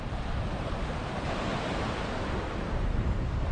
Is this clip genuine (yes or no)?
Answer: no